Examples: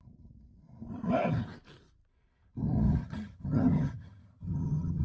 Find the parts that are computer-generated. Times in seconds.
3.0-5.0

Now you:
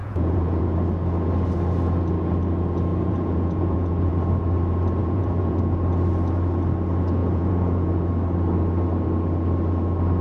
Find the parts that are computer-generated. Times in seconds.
0.0-0.6; 2.9-4.1; 5.0-5.6; 7.2-8.1

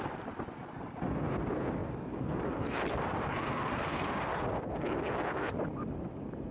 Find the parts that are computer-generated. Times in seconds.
none

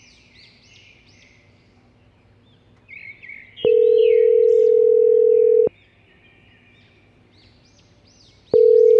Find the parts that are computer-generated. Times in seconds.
none

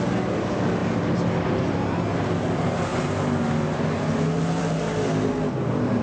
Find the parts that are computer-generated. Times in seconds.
none

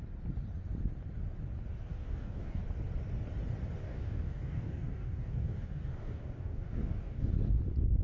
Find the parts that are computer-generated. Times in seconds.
1.9-2.6; 3.8-7.3

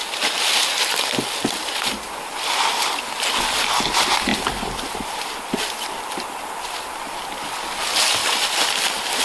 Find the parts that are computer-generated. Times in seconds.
none

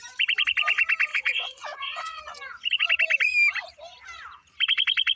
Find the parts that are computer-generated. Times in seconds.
1.1-2.2